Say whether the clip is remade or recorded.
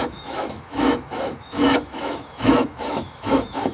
remade